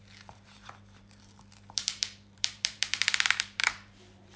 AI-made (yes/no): yes